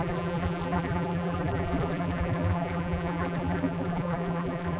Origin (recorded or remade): remade